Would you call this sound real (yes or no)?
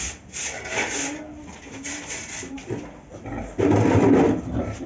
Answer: yes